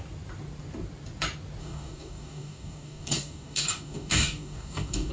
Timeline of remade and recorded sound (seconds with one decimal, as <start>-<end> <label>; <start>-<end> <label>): 0.0-1.6 recorded; 1.6-5.1 remade